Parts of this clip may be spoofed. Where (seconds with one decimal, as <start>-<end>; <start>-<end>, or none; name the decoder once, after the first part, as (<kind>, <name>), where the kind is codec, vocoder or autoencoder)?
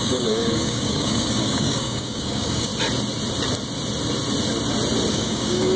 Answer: 0.0-2.7 (codec, DAC); 5.1-5.8